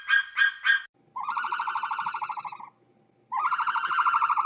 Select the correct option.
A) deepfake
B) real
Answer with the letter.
B